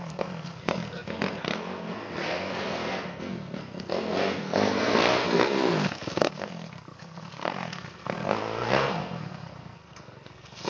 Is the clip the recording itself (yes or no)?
no